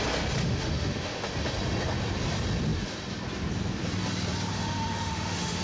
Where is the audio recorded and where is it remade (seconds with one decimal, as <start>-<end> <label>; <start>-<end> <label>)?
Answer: 0.0-0.4 recorded; 0.4-1.2 remade; 1.2-4.5 recorded; 4.5-5.6 remade